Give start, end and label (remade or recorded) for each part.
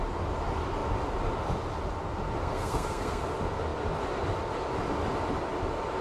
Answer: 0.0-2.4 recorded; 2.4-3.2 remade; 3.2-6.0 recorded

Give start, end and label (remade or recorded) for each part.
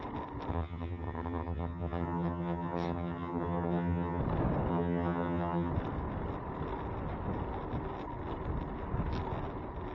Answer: 0.0-0.5 recorded; 0.5-4.2 remade; 4.2-4.7 recorded; 4.7-5.7 remade; 5.7-9.9 recorded